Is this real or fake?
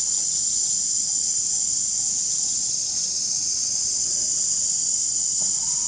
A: fake